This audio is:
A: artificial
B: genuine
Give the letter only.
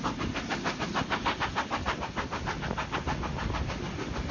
B